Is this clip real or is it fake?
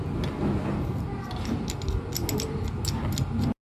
real